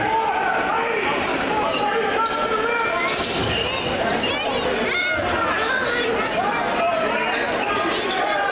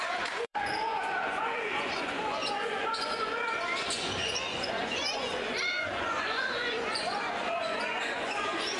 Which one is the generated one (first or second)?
second